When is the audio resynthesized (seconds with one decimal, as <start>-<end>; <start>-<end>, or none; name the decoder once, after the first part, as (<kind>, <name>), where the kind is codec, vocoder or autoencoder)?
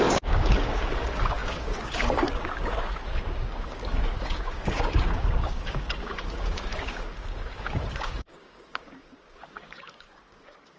0.0-10.8 (codec, DAC)